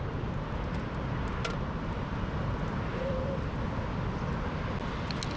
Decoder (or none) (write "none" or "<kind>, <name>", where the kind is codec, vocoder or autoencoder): none